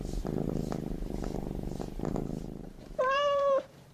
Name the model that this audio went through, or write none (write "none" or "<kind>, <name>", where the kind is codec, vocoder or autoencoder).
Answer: vocoder, BigVGAN v2